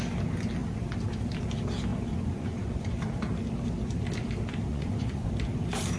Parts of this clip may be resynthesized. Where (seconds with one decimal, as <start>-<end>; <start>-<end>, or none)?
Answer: 1.9-3.0; 4.7-5.3